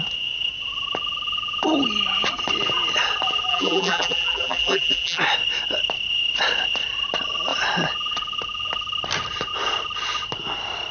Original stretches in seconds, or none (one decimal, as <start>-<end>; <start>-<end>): 0.0-3.5; 5.2-10.9